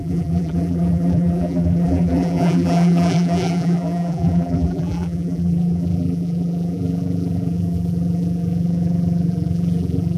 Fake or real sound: fake